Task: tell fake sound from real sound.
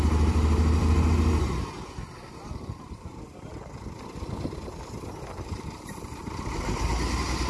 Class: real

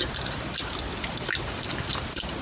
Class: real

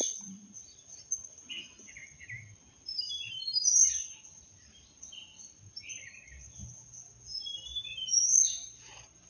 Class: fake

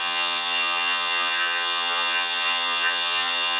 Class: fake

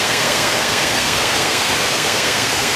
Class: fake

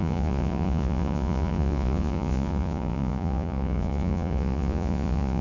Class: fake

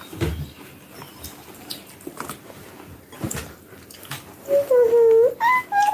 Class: real